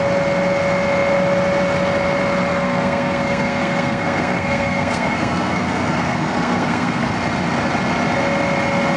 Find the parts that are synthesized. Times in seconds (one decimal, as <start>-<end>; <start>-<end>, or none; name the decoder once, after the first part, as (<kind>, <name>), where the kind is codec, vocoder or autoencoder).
2.5-7.1 (codec, SNAC)